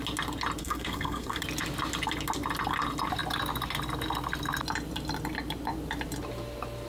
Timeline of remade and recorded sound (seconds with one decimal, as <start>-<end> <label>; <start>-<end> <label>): 0.0-0.6 recorded; 0.6-1.4 remade; 1.4-6.9 recorded